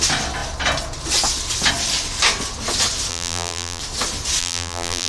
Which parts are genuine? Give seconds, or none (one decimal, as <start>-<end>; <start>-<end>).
0.0-3.1; 3.8-4.4